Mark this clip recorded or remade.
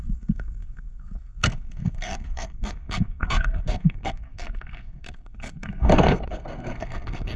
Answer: remade